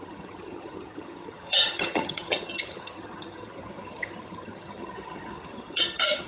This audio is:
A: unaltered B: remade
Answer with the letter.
B